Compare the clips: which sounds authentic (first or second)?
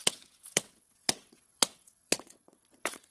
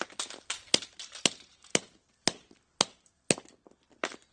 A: second